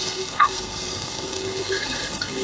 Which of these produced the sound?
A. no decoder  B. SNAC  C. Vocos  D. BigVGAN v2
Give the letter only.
B